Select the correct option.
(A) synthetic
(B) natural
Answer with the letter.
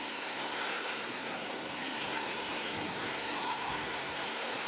A